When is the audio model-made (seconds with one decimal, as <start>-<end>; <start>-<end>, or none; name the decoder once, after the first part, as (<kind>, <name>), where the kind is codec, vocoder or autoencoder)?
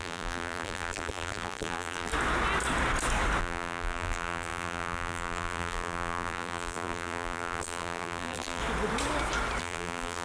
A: 0.0-2.1 (vocoder, BigVGAN v2); 3.4-8.6; 9.6-10.2